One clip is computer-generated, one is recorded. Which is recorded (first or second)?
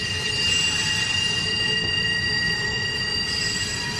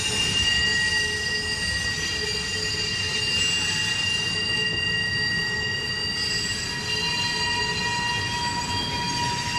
second